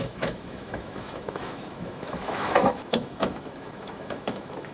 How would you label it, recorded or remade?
remade